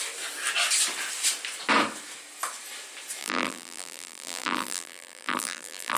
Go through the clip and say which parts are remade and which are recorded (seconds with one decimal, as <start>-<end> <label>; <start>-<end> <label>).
0.0-3.2 recorded; 3.2-6.0 remade